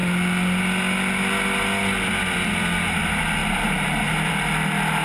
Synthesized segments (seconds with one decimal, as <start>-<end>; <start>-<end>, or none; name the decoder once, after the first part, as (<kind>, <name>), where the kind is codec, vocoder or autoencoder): none